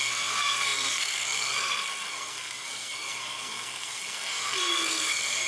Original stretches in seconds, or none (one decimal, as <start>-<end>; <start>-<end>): none